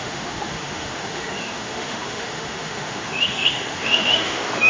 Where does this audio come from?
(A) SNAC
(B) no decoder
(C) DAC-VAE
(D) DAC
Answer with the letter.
C